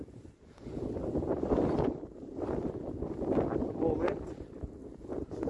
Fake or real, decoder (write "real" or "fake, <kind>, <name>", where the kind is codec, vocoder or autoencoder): real